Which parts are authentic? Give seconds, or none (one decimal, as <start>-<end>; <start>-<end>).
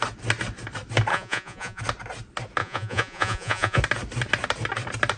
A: 0.0-1.1; 1.8-2.6; 3.8-5.2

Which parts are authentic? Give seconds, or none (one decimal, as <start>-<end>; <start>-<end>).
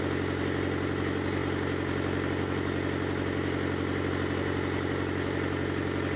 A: 0.0-6.2